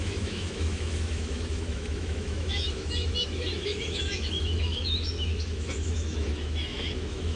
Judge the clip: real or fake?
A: fake